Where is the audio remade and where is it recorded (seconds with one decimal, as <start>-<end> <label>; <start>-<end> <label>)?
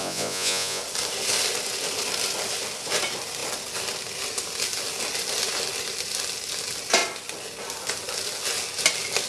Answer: 0.0-0.8 remade; 0.8-9.3 recorded